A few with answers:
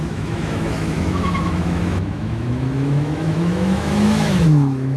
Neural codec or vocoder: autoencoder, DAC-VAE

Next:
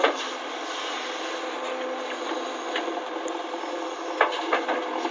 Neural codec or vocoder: none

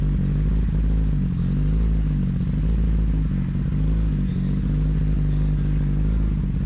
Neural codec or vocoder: none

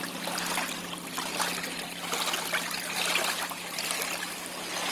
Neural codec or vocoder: none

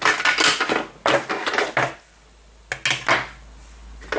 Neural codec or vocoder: none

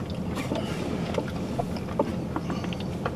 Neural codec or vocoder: none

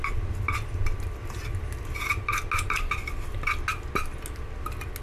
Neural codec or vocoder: none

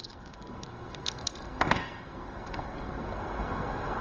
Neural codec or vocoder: codec, SNAC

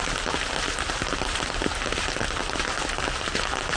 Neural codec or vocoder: none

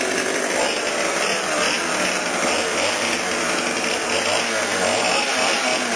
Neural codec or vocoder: none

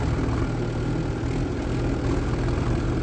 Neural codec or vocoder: none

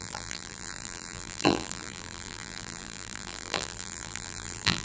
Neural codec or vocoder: vocoder, BigVGAN v2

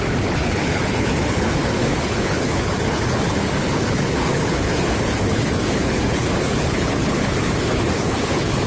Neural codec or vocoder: codec, HILCodec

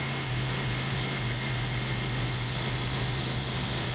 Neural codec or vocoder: none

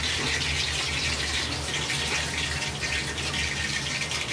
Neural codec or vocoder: none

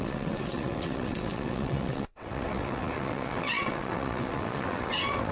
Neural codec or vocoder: vocoder, WaveNeXt